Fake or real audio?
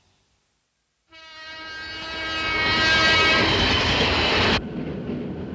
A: real